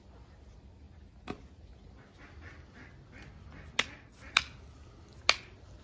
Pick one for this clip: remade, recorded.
recorded